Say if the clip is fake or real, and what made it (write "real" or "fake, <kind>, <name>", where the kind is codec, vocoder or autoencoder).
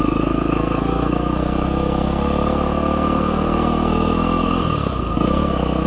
fake, codec, SNAC